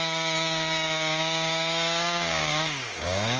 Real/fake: fake